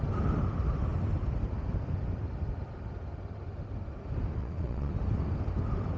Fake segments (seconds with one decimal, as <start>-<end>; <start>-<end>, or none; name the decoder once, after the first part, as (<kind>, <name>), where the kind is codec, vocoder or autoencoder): 4.4-4.9 (vocoder, Vocos)